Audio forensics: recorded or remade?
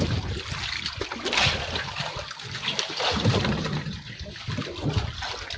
recorded